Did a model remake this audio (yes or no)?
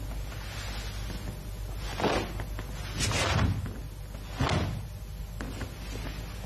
no